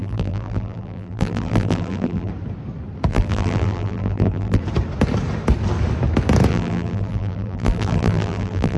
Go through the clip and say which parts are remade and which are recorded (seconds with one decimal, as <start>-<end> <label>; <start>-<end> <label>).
0.0-2.3 remade; 2.3-3.1 recorded; 3.1-4.6 remade; 4.6-6.5 recorded; 6.5-8.8 remade